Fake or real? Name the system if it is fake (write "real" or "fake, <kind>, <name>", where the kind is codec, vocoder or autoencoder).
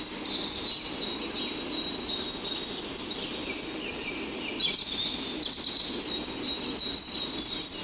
real